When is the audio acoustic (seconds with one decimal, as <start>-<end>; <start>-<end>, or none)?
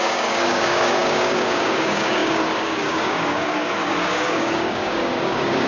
none